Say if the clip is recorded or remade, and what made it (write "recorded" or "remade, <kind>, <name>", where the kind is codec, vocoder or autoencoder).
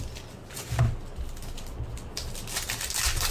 recorded